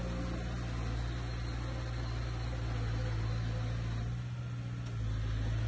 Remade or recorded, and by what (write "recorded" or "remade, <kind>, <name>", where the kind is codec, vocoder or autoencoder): recorded